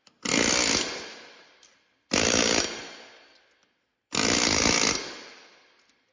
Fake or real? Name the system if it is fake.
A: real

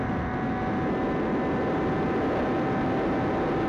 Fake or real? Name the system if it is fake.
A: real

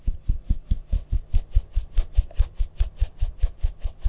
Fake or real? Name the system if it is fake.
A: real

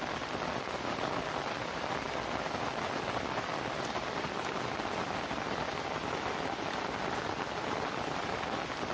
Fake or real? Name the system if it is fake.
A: real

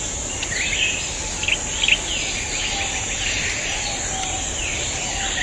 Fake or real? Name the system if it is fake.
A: real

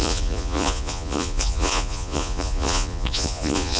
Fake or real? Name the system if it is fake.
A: fake, vocoder, Vocos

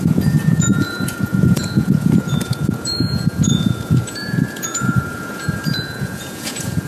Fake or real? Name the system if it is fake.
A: fake, vocoder, Vocos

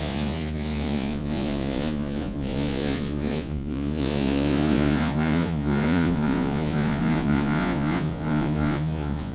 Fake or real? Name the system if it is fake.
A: fake, vocoder, Vocos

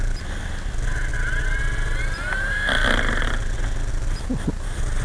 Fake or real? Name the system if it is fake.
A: real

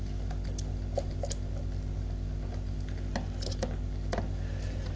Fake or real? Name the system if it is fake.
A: real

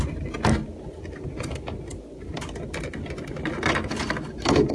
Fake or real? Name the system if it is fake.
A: real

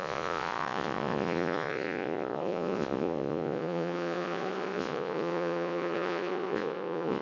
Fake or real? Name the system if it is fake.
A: fake, vocoder, Vocos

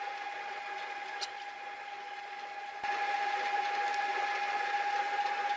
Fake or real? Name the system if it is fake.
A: real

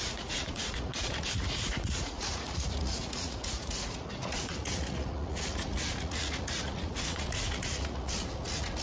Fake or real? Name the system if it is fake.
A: fake, vocoder, Vocos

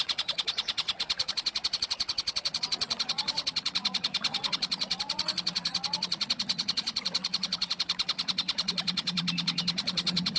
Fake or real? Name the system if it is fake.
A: fake, vocoder, Vocos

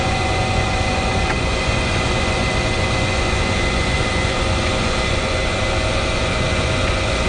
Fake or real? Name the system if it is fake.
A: fake, vocoder, Vocos